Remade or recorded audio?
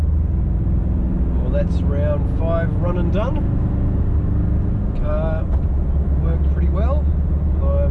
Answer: recorded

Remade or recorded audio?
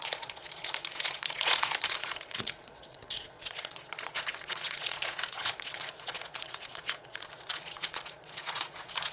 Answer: remade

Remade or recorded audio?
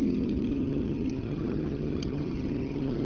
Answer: remade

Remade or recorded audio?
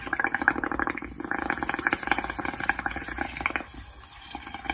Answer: recorded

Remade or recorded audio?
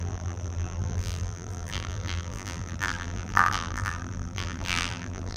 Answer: remade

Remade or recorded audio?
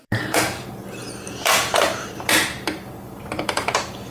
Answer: remade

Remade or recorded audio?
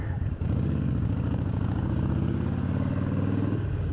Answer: remade